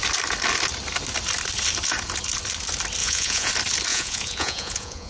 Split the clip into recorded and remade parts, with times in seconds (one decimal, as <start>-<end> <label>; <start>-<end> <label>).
0.0-3.0 recorded; 3.0-3.5 remade; 3.5-3.9 recorded; 3.9-5.1 remade